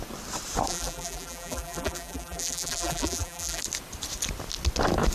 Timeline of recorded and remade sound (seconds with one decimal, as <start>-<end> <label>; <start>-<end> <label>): 0.0-0.7 recorded; 0.7-3.6 remade; 3.6-5.1 recorded